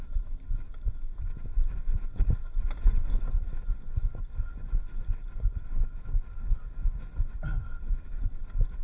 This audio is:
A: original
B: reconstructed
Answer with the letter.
A